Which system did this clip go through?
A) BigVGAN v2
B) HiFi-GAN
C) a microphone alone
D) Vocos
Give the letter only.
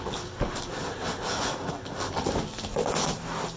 C